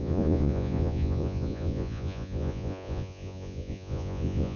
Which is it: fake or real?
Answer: fake